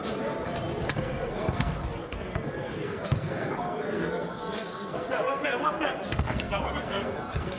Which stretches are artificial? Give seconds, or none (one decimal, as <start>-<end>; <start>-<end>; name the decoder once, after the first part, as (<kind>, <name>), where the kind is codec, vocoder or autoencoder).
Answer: 0.9-7.6 (codec, SNAC)